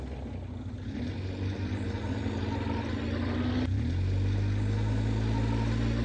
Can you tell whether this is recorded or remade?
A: recorded